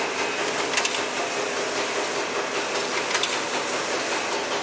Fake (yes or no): no